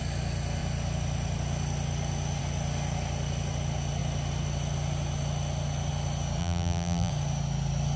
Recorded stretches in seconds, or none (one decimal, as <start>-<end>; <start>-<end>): 0.0-6.4; 7.1-8.0